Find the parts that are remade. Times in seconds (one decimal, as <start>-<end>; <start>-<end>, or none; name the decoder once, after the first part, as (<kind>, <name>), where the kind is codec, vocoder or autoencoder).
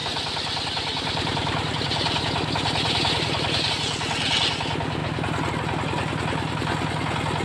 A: 0.0-3.7 (vocoder, BigVGAN v2)